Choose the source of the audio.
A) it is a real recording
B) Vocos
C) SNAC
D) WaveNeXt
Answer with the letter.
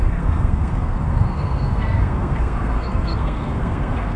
C